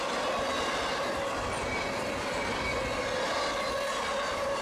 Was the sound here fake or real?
real